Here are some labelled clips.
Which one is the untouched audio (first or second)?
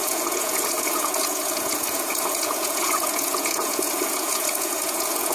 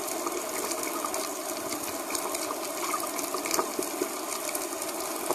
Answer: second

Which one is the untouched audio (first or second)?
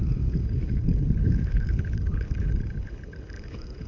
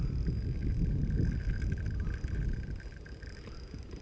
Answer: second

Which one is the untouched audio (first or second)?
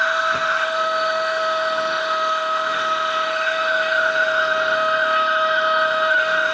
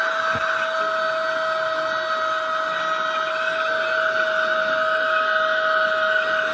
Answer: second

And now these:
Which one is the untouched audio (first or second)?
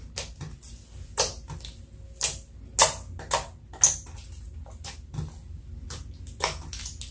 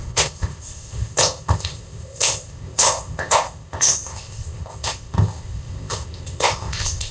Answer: first